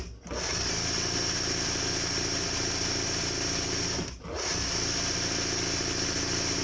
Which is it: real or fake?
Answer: real